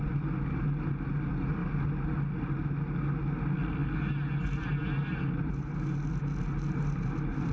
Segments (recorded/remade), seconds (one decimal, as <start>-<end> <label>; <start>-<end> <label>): 0.0-7.5 recorded